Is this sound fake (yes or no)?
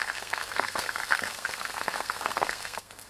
yes